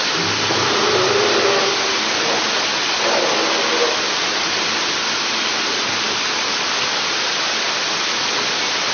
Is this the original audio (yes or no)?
yes